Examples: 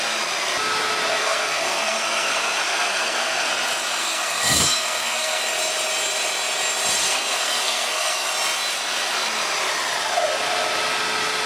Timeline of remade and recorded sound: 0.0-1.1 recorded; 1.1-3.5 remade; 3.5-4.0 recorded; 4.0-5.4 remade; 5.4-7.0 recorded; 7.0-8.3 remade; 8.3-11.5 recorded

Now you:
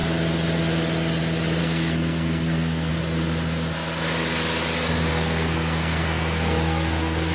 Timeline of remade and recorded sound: 0.0-1.6 recorded; 1.6-2.9 remade; 2.9-5.1 recorded; 5.1-7.3 remade